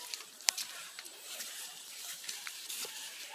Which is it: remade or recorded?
remade